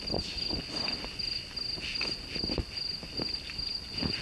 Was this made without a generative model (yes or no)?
yes